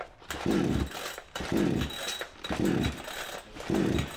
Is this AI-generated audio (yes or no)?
no